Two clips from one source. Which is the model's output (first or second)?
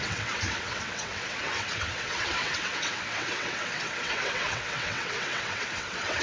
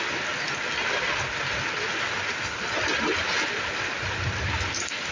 first